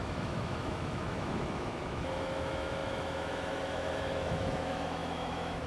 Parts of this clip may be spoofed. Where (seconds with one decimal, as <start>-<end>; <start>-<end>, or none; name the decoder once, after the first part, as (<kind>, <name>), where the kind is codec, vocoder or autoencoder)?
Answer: 0.0-5.7 (autoencoder, DAC-VAE)